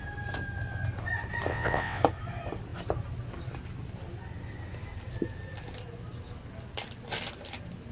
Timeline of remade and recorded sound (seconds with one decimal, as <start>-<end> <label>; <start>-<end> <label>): 0.0-1.5 recorded; 1.5-2.0 remade; 2.0-7.9 recorded